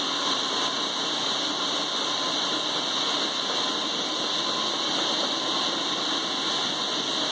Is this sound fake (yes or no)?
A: no